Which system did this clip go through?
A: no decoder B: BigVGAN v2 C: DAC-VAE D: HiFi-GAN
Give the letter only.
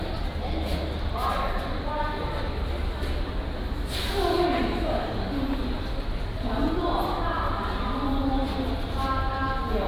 A